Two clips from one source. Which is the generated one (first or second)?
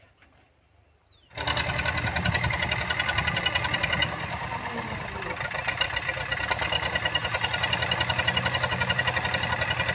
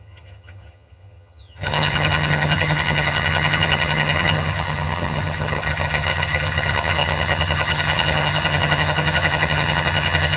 second